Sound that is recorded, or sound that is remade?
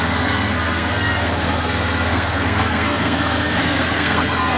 remade